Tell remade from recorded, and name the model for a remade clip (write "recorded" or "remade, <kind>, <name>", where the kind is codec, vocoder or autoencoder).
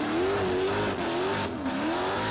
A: recorded